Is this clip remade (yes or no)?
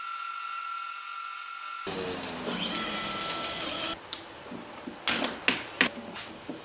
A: no